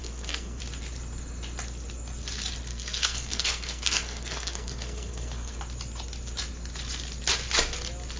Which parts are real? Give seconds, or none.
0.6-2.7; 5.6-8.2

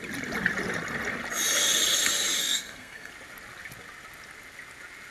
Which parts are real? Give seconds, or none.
0.0-2.4; 3.1-5.1

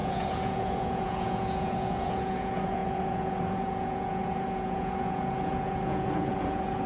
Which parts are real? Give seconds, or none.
none

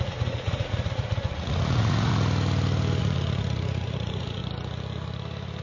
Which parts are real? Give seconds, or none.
2.1-3.0; 4.4-5.6

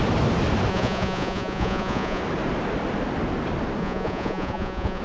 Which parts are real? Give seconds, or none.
0.0-0.7; 2.2-3.8

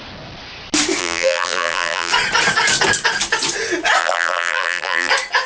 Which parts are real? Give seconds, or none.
0.0-1.0; 2.1-4.0; 5.1-5.5